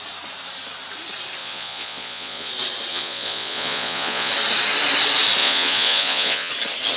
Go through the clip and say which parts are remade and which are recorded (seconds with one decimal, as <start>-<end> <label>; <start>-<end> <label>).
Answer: 0.0-1.4 recorded; 1.4-2.5 remade; 2.5-2.9 recorded; 2.9-4.3 remade; 4.3-5.4 recorded; 5.4-6.5 remade; 6.5-7.0 recorded